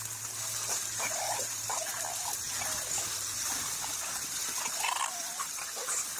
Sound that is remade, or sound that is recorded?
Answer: recorded